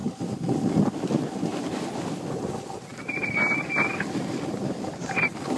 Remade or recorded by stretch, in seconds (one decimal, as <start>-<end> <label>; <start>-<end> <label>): 0.0-1.5 recorded; 1.5-2.3 remade; 2.3-2.9 recorded; 2.9-4.9 remade; 4.9-5.6 recorded